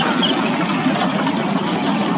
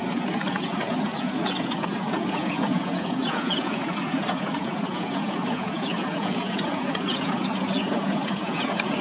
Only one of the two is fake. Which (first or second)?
second